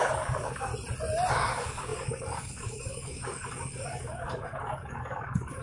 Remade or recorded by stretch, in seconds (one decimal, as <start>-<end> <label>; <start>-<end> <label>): 0.0-0.7 remade; 0.7-1.3 recorded; 1.3-5.6 remade